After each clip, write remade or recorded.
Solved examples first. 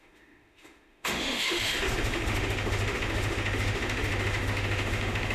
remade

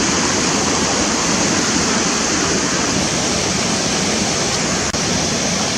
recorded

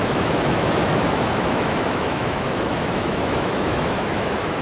remade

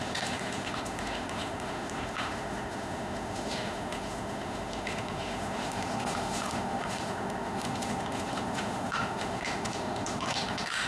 remade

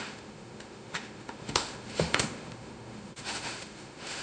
remade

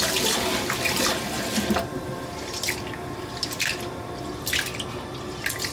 recorded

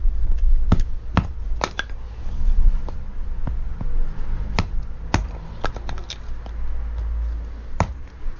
recorded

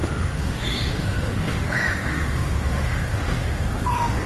remade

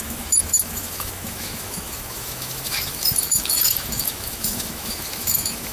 remade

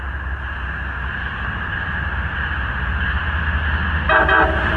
recorded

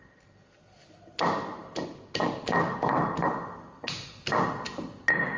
recorded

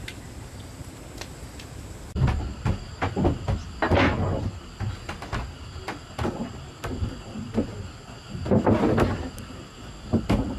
recorded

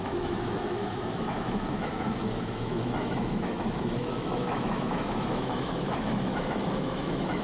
remade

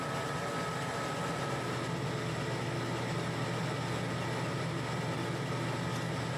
recorded